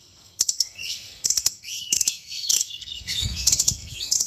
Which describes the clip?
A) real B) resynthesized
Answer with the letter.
B